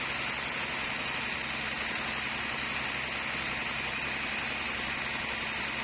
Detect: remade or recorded recorded